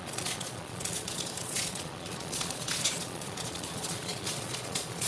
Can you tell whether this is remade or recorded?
remade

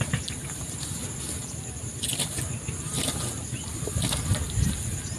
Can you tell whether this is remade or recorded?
recorded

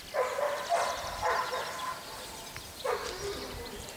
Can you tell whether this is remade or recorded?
recorded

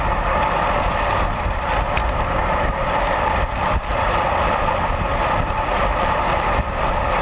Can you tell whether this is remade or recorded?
remade